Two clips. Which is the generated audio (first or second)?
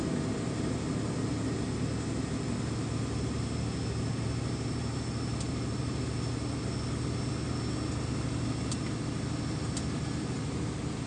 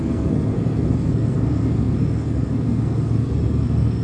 second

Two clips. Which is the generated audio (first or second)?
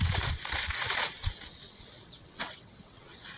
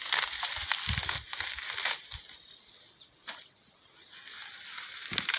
first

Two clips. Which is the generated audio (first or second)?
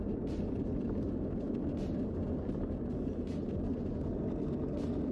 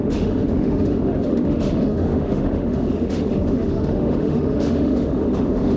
second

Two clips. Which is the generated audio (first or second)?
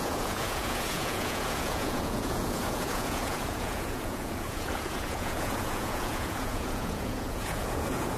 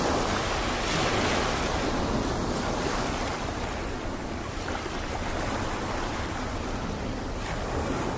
first